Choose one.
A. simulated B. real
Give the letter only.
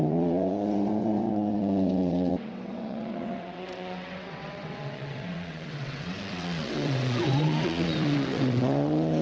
A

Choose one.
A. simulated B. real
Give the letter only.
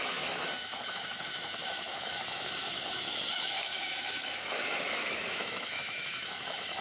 A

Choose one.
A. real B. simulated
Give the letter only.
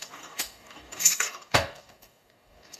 B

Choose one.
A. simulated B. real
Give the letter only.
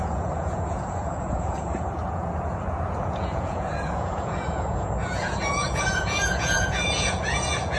A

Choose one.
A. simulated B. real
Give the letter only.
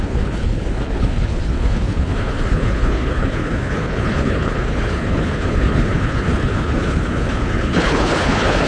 A